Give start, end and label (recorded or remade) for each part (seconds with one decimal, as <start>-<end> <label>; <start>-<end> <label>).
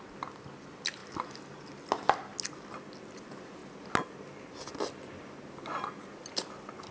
0.0-6.9 recorded